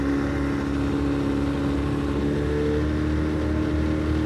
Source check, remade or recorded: recorded